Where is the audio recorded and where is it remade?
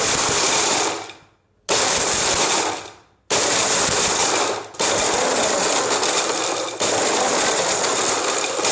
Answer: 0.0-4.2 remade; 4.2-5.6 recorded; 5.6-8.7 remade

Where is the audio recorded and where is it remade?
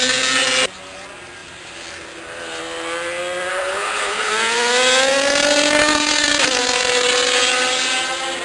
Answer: 0.0-3.5 recorded; 3.5-4.3 remade; 4.3-8.4 recorded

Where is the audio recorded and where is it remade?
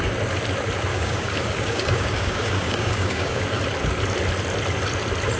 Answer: 0.0-0.9 recorded; 0.9-3.6 remade; 3.6-5.4 recorded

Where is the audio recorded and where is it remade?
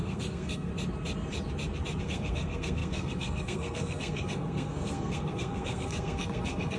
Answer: 0.0-0.7 remade; 0.7-2.0 recorded; 2.0-6.8 remade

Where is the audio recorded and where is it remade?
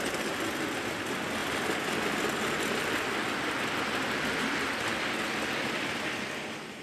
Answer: 0.0-6.8 recorded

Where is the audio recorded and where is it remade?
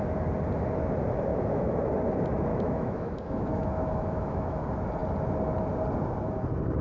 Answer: 0.0-1.3 recorded; 1.3-1.9 remade; 1.9-2.5 recorded; 2.5-4.6 remade; 4.6-6.8 recorded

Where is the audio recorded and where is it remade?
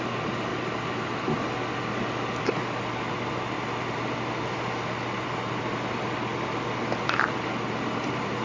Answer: 0.0-8.4 recorded